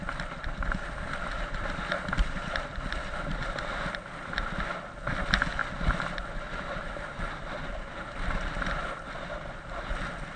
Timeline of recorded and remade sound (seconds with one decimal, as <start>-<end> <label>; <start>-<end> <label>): 0.0-10.4 recorded